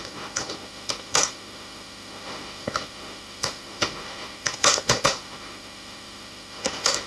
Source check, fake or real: fake